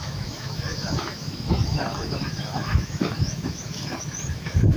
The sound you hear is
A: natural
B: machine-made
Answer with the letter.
B